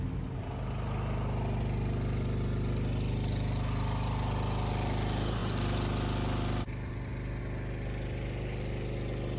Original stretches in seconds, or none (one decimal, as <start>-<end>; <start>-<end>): 0.0-9.4